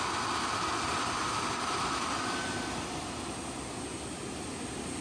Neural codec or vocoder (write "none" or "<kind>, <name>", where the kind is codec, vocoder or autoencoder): none